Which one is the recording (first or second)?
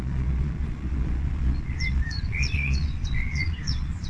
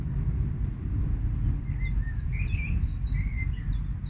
second